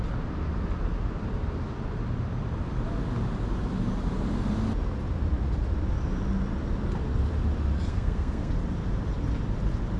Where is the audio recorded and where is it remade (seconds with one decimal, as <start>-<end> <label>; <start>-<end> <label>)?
0.0-7.9 recorded; 7.9-8.5 remade; 8.5-10.0 recorded